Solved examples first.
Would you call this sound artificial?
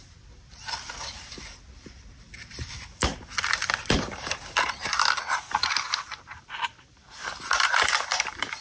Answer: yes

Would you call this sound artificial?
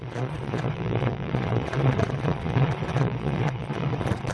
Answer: yes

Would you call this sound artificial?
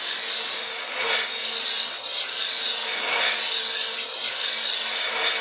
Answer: no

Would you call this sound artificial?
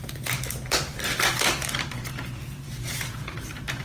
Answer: yes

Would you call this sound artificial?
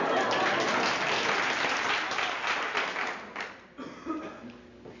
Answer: no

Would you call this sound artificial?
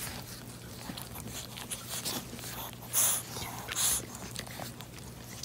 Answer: no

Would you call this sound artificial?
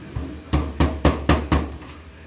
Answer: no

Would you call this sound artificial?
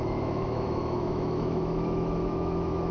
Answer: yes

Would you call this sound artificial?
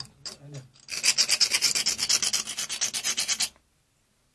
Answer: no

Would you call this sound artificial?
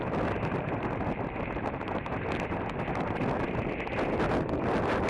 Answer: no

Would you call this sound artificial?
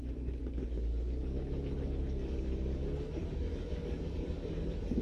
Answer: yes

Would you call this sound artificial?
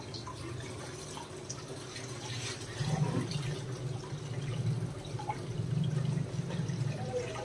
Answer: no